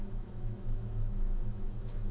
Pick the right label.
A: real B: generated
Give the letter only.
B